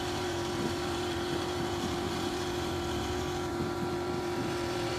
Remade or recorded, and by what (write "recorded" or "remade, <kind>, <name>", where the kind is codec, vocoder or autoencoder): remade, vocoder, BigVGAN v2